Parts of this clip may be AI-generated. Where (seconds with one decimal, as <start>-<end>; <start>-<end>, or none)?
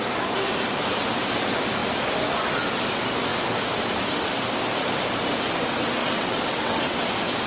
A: 6.0-7.1